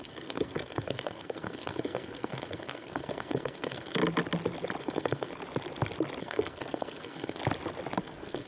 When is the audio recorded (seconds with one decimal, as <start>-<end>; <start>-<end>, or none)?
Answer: 4.0-4.8; 5.3-6.2; 7.4-8.0